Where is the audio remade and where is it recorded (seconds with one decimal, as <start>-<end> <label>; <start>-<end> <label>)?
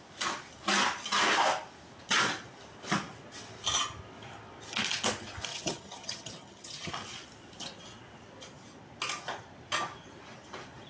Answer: 0.0-5.5 recorded; 5.5-6.9 remade; 6.9-10.9 recorded